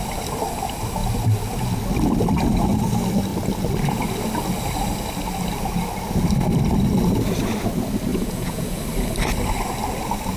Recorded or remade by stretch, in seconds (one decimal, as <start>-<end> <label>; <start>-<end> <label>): 0.0-8.1 recorded; 8.1-8.8 remade; 8.8-10.4 recorded